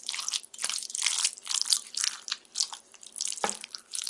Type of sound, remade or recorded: remade